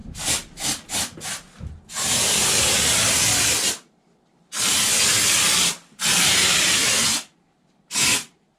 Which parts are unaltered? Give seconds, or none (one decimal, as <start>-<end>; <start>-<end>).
0.0-3.5; 4.9-5.6